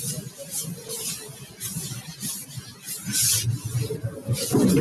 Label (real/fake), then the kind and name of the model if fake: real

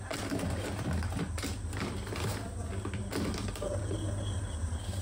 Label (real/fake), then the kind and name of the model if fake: real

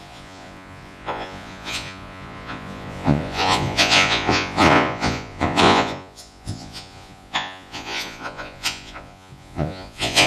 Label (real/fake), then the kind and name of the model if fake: fake, vocoder, Vocos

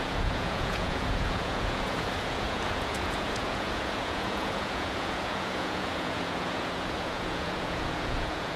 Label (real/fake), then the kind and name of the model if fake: fake, vocoder, Vocos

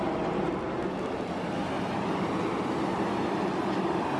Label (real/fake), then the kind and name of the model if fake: real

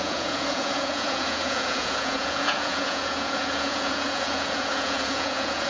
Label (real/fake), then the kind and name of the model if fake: fake, vocoder, Vocos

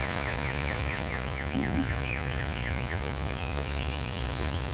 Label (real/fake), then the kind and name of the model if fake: fake, vocoder, Vocos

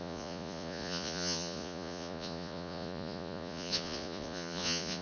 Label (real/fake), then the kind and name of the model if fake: fake, vocoder, Vocos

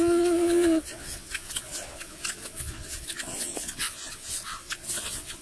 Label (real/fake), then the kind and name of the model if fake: fake, vocoder, Vocos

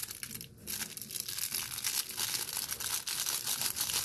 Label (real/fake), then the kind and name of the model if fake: real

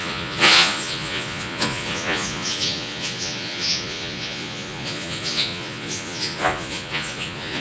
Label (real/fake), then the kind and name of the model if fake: fake, vocoder, Vocos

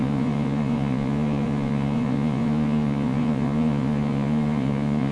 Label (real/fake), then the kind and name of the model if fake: fake, vocoder, Vocos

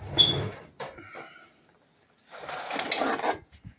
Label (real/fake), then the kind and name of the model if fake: real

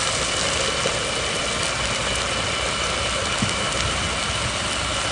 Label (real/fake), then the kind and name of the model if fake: real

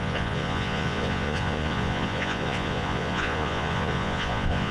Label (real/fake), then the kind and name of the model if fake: fake, vocoder, Vocos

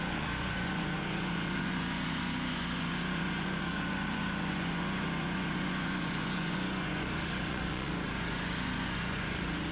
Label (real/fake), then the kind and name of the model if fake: fake, vocoder, Vocos